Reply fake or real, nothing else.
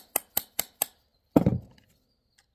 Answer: real